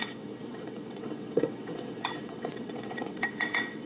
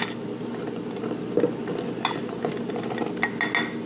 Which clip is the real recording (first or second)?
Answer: second